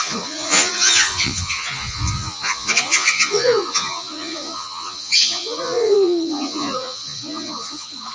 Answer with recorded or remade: remade